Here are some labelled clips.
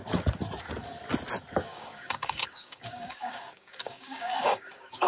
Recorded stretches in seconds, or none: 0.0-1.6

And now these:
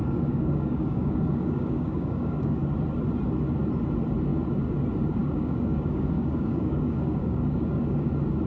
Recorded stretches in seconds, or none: 2.6-5.2; 8.1-8.5